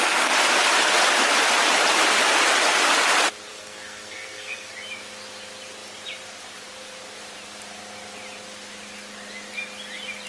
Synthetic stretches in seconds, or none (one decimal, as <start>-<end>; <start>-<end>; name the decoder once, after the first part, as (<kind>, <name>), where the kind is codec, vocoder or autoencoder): 3.5-4.7 (codec, SNAC)

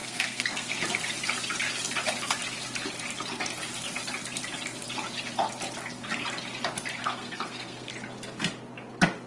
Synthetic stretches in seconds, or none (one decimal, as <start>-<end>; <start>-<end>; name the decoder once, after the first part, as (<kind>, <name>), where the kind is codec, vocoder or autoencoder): 0.0-0.7 (codec, SNAC); 7.0-7.9

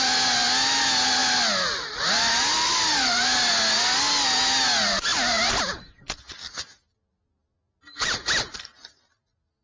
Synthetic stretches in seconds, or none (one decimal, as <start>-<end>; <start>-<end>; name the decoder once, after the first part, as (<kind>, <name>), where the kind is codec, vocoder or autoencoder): none

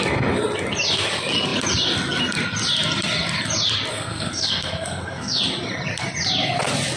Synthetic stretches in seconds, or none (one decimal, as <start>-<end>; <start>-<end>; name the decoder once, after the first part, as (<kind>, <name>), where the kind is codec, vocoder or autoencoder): 3.9-5.4 (codec, SNAC)